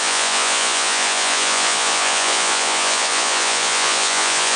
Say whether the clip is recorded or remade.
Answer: remade